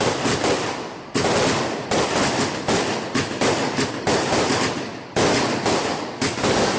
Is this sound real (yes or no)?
yes